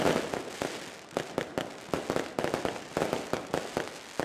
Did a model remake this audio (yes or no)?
no